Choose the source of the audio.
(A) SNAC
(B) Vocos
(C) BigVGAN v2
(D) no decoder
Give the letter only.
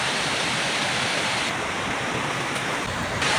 D